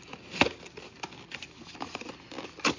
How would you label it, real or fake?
real